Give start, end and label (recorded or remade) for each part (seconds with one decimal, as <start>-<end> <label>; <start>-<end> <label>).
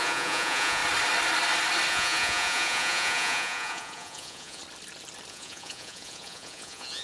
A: 0.0-0.8 remade; 0.8-1.9 recorded; 1.9-4.6 remade; 4.6-5.3 recorded; 5.3-7.0 remade